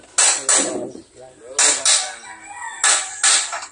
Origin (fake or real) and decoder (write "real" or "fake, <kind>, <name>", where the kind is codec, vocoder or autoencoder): real